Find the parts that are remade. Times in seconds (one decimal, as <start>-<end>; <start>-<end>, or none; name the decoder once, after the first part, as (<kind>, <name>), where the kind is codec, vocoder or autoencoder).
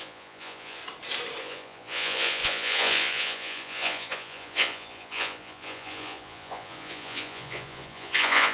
0.0-0.8 (vocoder, Vocos); 1.4-8.5